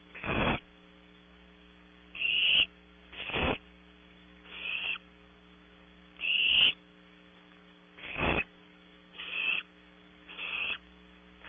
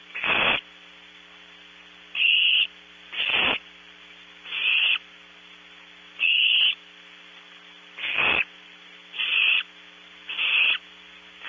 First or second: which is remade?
first